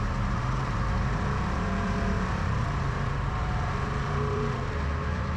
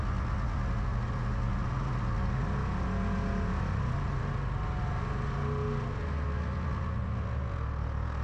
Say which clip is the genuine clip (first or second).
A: second